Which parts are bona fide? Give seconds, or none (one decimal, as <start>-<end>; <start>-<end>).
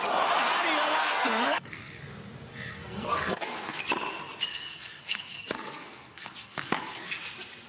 0.0-1.0; 2.0-2.5; 3.8-4.5; 7.2-7.7